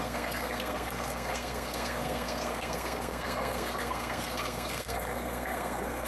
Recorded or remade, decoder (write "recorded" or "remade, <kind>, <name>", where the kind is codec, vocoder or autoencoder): remade, codec, SNAC